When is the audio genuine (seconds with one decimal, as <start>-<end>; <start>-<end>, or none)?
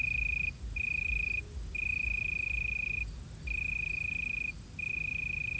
0.0-5.6